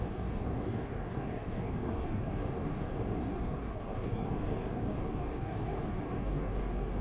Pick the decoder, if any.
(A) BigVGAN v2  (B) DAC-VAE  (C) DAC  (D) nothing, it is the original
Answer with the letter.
C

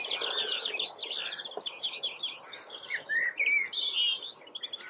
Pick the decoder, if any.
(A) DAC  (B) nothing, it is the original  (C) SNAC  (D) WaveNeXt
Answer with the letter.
B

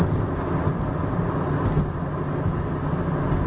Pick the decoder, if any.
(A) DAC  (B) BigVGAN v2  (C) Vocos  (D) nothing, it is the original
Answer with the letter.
D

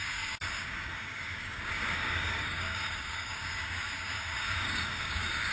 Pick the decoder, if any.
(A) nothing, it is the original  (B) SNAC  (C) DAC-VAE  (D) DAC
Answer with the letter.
D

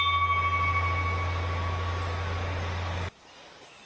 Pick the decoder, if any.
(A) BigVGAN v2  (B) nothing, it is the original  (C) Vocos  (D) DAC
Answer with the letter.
B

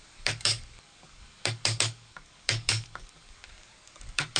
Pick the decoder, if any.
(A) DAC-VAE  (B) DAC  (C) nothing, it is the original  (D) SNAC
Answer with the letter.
B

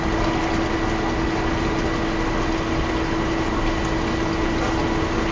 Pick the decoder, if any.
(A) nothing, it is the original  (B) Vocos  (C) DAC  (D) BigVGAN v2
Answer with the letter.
A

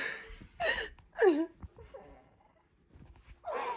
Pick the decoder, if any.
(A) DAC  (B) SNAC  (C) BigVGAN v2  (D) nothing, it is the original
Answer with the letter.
D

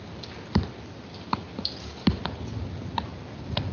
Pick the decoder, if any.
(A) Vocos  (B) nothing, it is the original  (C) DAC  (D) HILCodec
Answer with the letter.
B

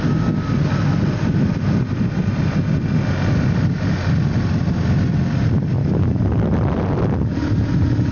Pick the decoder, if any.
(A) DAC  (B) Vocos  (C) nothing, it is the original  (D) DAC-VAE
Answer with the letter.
C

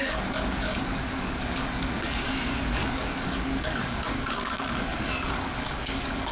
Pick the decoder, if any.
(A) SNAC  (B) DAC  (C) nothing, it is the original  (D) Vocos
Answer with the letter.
B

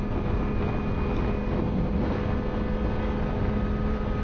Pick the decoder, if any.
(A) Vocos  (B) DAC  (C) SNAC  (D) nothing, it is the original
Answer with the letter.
D